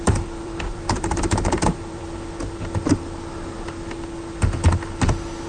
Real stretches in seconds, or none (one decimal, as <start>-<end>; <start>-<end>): 2.0-5.5